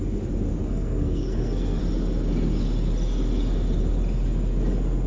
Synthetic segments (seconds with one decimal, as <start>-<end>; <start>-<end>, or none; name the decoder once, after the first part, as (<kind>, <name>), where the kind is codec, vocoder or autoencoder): 0.6-1.8 (codec, SNAC)